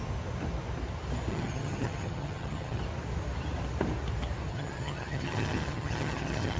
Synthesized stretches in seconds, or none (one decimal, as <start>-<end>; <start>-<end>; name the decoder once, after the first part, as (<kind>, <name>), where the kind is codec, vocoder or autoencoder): 1.3-2.8 (vocoder, HiFi-GAN); 4.5-6.6

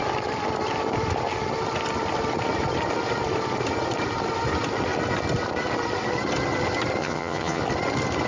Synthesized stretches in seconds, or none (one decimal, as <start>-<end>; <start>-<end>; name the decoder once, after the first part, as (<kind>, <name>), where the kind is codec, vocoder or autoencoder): 7.0-7.6 (vocoder, HiFi-GAN)

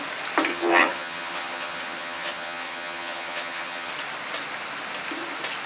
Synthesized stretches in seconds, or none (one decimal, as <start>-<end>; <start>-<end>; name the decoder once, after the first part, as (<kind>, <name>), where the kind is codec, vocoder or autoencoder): 0.5-3.9 (vocoder, HiFi-GAN)

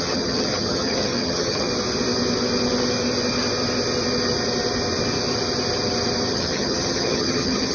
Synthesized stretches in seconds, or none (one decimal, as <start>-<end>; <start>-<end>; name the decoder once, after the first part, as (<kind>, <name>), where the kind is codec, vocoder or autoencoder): 0.0-1.7 (vocoder, HiFi-GAN); 6.3-7.7